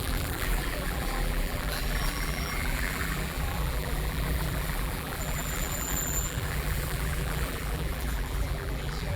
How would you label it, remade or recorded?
remade